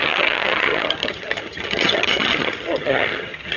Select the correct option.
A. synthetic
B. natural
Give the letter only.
A